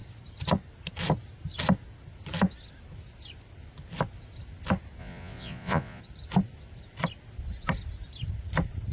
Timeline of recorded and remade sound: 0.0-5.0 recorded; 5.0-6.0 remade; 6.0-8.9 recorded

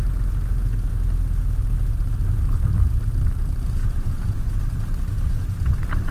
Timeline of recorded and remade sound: 0.0-3.8 recorded; 3.8-4.6 remade; 4.6-6.1 recorded

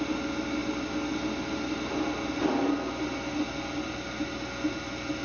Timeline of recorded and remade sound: 0.0-5.2 recorded

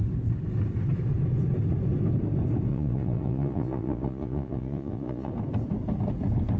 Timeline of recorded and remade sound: 0.0-2.7 recorded; 2.7-5.3 remade; 5.3-6.6 recorded

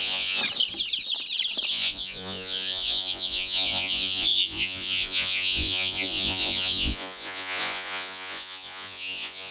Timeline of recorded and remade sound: 0.0-0.4 remade; 0.4-1.7 recorded; 1.7-9.5 remade

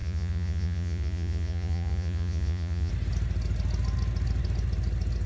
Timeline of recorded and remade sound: 0.0-2.9 remade; 2.9-5.3 recorded